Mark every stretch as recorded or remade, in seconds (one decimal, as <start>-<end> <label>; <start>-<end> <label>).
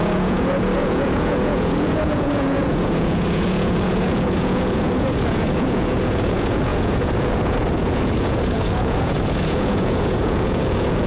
0.0-11.1 remade